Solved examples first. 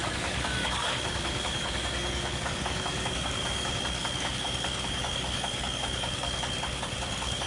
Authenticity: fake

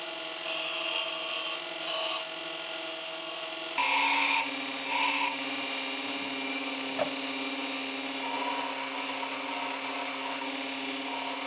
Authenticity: real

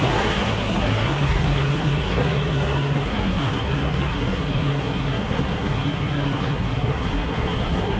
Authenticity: fake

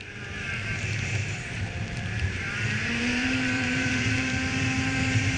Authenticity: fake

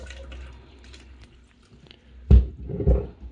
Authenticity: real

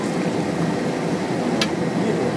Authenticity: real